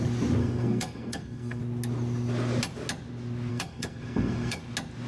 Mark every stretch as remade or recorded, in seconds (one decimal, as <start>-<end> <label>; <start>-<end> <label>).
0.0-0.4 recorded; 0.4-1.6 remade; 1.6-3.5 recorded; 3.5-4.6 remade; 4.6-5.1 recorded

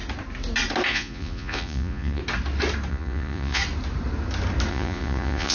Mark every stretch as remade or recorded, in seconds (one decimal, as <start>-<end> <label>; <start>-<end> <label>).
0.0-0.9 recorded; 0.9-2.2 remade; 2.2-2.9 recorded; 2.9-3.6 remade; 3.6-4.7 recorded; 4.7-5.5 remade

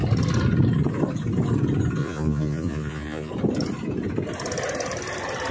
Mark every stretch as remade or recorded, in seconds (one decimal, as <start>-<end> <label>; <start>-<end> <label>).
0.0-2.0 recorded; 2.0-3.3 remade; 3.3-5.5 recorded

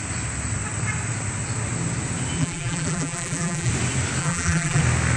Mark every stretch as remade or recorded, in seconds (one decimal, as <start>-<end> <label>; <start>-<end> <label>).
0.0-2.4 recorded; 2.4-3.7 remade; 3.7-4.2 recorded; 4.2-4.8 remade; 4.8-5.2 recorded

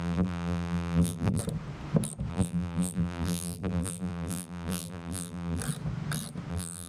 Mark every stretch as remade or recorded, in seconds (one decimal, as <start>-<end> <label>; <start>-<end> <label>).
0.0-1.4 remade; 1.4-2.3 recorded; 2.3-5.6 remade; 5.6-6.5 recorded; 6.5-6.9 remade

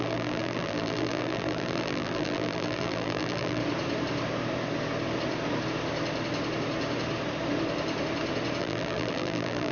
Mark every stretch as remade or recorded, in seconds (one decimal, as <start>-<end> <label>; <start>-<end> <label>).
0.0-3.6 remade; 3.6-8.6 recorded; 8.6-9.7 remade

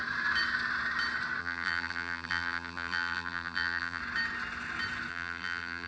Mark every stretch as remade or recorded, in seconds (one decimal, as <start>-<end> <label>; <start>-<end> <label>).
0.0-1.4 recorded; 1.4-4.0 remade; 4.0-5.1 recorded; 5.1-5.9 remade

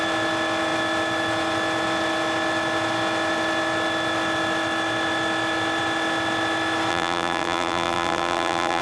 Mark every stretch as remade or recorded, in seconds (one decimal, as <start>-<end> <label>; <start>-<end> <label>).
0.0-6.9 recorded; 6.9-8.8 remade